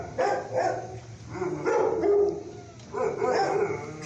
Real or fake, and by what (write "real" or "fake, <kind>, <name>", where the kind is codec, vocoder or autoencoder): real